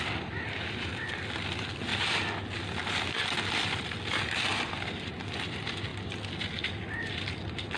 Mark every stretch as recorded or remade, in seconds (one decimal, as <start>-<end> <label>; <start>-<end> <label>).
0.0-7.8 recorded